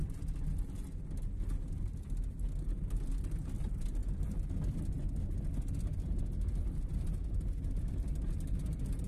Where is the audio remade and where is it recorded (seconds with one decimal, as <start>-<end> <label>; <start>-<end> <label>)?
0.0-9.1 recorded